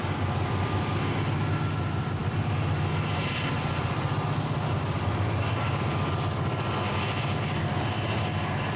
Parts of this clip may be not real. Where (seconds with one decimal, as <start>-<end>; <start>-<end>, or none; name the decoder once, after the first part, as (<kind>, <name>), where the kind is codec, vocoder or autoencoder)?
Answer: none